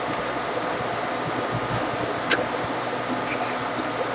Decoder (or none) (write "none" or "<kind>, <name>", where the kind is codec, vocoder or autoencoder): none